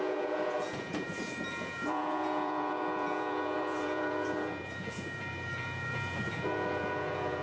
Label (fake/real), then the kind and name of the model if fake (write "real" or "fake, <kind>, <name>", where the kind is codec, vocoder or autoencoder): fake, vocoder, Vocos